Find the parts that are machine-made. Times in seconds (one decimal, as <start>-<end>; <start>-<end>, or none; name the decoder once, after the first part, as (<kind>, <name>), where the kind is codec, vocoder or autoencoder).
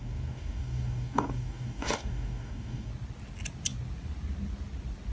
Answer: 0.0-2.9 (codec, DAC)